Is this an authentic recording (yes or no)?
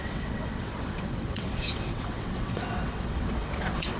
no